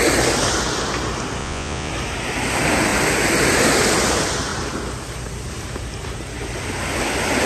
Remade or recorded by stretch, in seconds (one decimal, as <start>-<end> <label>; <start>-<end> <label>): 0.0-1.4 recorded; 1.4-1.9 remade; 1.9-7.5 recorded